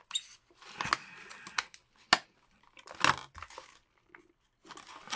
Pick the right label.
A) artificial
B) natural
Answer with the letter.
B